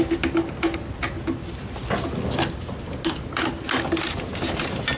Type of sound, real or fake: real